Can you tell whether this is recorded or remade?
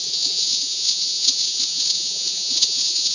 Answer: remade